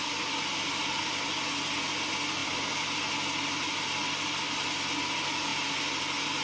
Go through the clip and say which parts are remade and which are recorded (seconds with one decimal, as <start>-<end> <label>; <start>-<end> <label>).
0.0-6.4 recorded